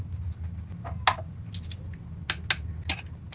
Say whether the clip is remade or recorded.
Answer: recorded